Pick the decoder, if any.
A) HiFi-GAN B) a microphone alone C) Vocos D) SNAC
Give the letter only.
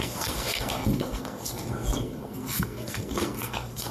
D